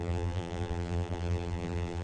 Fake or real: fake